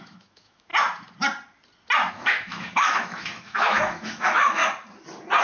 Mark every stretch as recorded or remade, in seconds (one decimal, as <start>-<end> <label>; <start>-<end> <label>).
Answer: 0.0-0.7 remade; 0.7-2.1 recorded; 2.1-4.6 remade; 4.6-5.4 recorded